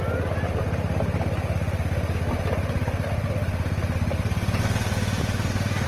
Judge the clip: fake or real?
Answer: real